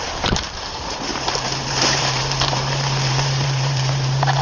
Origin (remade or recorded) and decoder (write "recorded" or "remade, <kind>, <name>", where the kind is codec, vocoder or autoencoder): remade, vocoder, BigVGAN v2